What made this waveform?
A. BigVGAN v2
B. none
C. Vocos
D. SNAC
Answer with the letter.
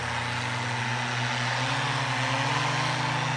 B